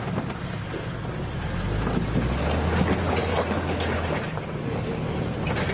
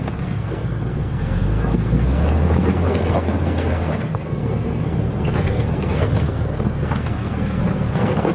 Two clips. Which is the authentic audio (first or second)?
first